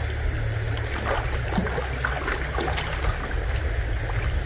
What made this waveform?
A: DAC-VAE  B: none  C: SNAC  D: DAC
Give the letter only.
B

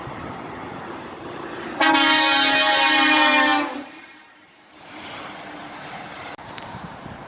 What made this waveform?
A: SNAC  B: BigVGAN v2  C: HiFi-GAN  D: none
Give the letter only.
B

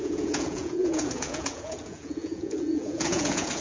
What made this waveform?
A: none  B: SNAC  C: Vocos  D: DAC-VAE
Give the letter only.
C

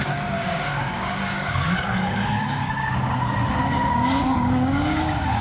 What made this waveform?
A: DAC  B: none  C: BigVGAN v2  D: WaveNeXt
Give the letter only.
A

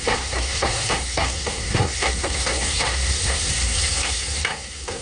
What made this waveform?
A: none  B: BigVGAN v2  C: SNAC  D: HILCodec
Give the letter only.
C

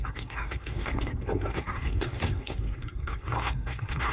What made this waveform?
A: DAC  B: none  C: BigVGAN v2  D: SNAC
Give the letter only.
D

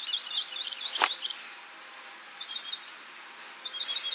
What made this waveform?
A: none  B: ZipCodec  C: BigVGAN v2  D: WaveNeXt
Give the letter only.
C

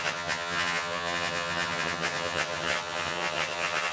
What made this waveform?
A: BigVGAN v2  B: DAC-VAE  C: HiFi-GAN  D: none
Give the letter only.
C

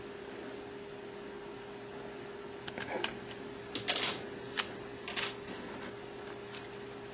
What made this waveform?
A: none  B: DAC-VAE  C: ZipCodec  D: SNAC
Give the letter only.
A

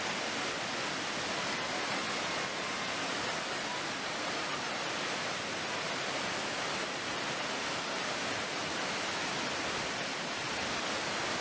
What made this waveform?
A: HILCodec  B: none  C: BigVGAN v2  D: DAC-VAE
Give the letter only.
B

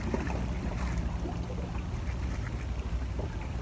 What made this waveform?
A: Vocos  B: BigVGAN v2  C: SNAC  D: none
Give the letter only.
D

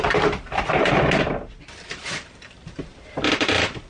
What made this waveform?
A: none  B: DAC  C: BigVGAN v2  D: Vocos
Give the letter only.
C